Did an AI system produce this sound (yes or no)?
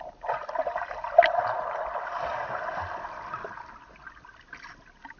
no